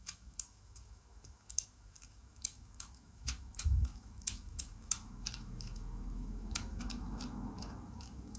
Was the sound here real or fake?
fake